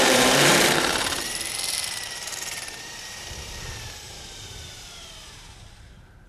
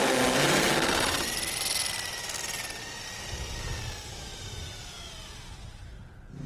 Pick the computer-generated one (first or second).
first